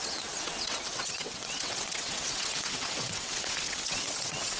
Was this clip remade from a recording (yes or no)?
yes